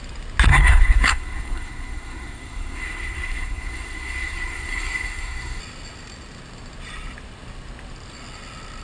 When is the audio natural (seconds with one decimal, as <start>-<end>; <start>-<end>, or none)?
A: 0.0-0.5; 5.6-8.8